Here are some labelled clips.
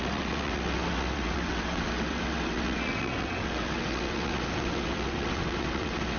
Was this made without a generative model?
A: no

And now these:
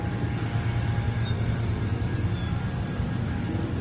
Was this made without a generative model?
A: yes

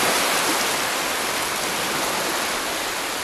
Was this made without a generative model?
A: yes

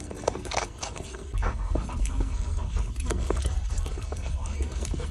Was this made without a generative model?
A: no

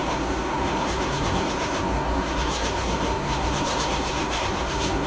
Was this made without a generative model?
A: no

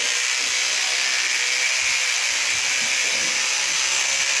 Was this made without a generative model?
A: yes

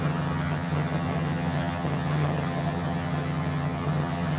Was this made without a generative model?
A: no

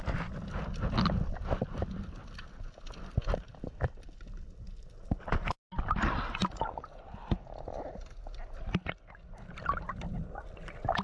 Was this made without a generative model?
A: yes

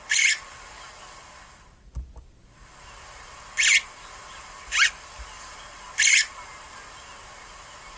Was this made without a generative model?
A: yes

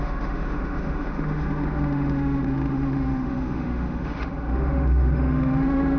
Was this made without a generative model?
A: no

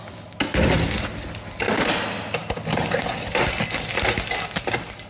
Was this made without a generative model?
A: yes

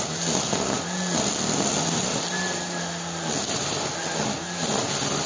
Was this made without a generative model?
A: yes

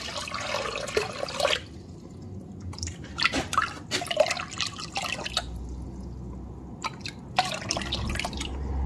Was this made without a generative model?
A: yes